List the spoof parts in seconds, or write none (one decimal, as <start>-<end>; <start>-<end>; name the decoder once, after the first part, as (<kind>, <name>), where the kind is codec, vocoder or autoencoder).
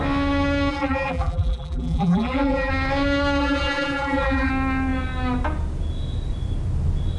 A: 0.7-2.7 (vocoder, BigVGAN v2); 3.4-4.5